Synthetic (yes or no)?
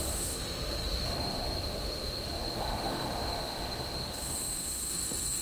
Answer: yes